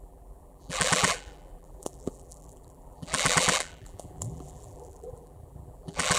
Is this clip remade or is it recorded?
remade